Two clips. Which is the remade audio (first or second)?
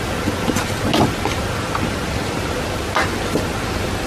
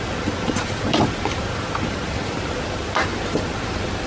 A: second